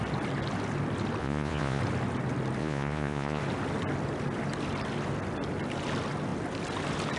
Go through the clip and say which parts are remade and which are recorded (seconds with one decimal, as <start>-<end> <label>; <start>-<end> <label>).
0.0-1.2 recorded; 1.2-1.8 remade; 1.8-2.6 recorded; 2.6-3.4 remade; 3.4-7.2 recorded